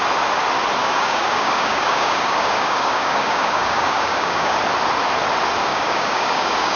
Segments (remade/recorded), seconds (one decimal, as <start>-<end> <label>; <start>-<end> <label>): 0.0-0.8 recorded; 0.8-4.6 remade; 4.6-5.6 recorded; 5.6-6.8 remade